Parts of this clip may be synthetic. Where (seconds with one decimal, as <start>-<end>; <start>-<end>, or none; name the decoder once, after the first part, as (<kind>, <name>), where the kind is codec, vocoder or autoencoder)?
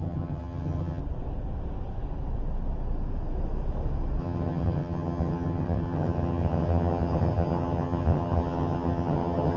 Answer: 0.0-1.0 (vocoder, HiFi-GAN); 4.2-9.6